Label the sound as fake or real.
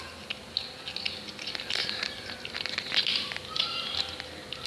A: real